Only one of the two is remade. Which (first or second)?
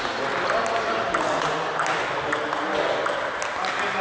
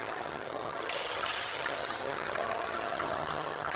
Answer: second